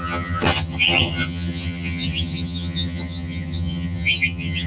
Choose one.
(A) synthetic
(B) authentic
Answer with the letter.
A